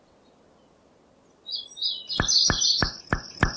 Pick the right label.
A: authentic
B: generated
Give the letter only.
A